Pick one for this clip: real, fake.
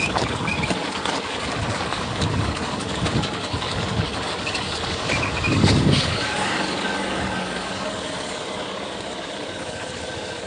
fake